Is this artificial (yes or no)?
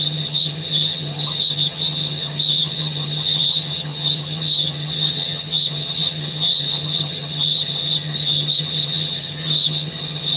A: yes